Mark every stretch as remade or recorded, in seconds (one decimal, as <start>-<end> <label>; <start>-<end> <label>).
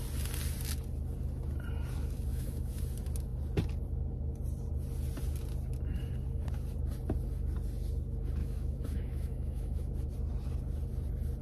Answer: 0.0-2.3 recorded; 2.3-2.8 remade; 2.8-8.4 recorded; 8.4-9.9 remade; 9.9-11.4 recorded